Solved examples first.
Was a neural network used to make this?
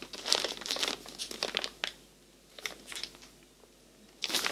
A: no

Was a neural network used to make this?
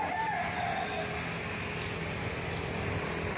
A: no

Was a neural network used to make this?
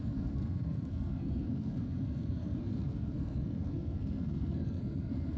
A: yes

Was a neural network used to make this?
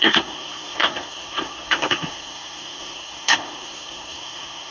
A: yes